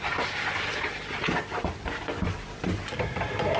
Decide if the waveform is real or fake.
real